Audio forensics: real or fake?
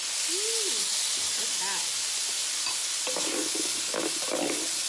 real